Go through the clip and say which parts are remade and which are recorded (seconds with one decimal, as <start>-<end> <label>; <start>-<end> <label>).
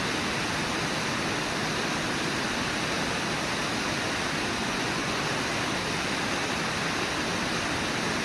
0.0-4.6 recorded; 4.6-5.2 remade; 5.2-8.2 recorded